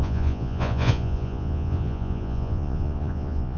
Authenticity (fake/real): fake